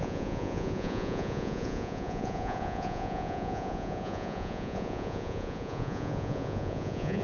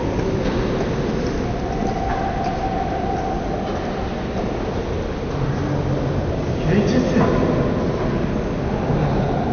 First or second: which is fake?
first